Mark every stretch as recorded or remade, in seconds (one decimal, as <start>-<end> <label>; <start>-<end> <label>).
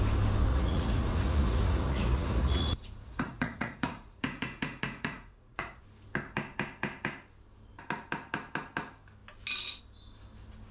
0.0-0.5 recorded; 0.5-5.8 remade; 5.8-10.7 recorded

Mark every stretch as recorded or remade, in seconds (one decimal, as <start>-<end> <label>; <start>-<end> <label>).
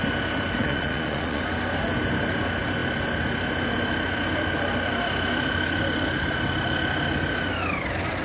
0.0-0.6 recorded; 0.6-1.4 remade; 1.4-8.2 recorded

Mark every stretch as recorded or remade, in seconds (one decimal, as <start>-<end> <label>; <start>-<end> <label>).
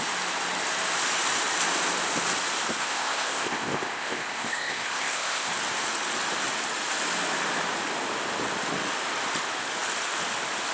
0.0-2.8 recorded; 2.8-5.5 remade; 5.5-10.7 recorded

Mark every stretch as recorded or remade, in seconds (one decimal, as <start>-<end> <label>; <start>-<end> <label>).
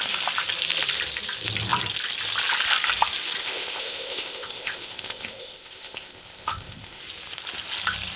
0.0-3.4 recorded; 3.4-7.0 remade; 7.0-8.2 recorded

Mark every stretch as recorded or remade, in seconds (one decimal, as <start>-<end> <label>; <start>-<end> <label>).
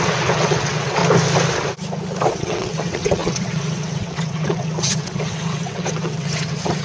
0.0-1.0 remade; 1.0-2.3 recorded; 2.3-6.8 remade